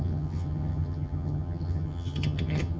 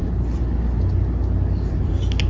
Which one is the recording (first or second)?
second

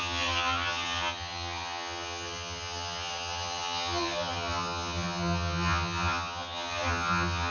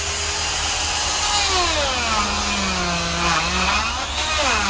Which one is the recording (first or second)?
second